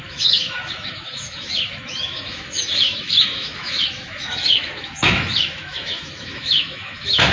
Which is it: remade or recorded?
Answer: remade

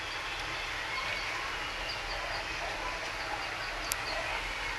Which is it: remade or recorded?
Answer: recorded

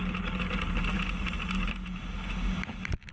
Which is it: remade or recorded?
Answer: recorded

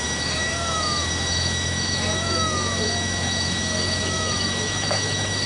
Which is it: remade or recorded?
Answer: remade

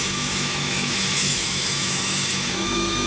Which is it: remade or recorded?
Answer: remade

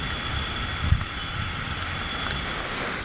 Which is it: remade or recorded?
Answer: recorded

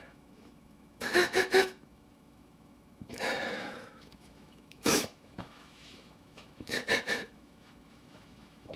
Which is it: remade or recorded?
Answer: remade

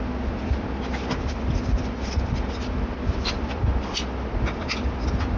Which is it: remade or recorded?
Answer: recorded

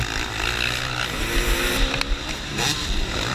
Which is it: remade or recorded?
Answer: recorded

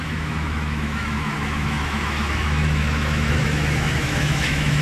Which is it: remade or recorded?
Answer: remade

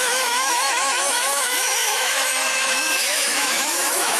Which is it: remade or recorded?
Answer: remade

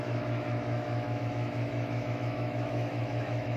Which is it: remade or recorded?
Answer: remade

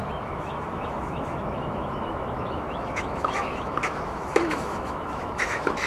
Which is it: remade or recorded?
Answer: remade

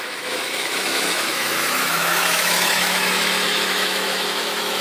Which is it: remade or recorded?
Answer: remade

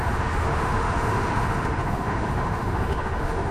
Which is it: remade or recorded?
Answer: remade